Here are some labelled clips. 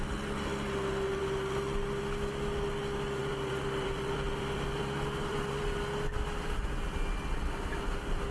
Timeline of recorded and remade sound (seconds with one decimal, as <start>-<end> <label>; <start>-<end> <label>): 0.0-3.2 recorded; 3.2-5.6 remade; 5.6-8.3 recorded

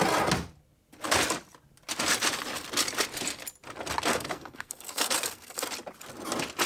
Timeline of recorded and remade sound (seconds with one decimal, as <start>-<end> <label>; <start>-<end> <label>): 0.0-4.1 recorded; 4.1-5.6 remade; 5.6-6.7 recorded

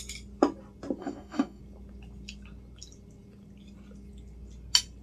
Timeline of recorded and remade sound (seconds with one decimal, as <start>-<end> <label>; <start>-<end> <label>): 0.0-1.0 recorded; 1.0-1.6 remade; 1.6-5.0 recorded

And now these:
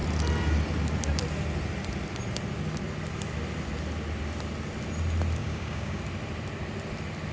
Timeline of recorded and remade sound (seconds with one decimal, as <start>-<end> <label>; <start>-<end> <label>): 0.0-5.4 recorded; 5.4-6.0 remade; 6.0-7.3 recorded

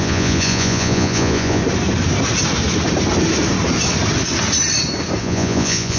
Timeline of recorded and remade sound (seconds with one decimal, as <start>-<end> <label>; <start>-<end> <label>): 0.0-1.6 remade; 1.6-5.2 recorded; 5.2-6.0 remade

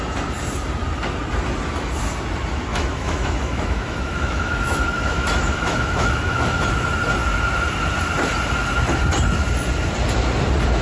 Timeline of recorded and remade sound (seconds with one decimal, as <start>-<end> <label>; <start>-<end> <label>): 0.0-2.7 recorded; 2.7-6.6 remade; 6.6-10.8 recorded